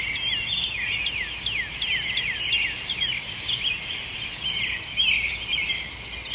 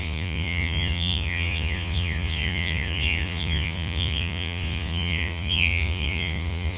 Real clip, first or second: first